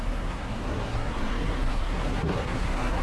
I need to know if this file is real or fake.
fake